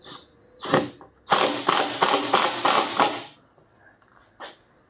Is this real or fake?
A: real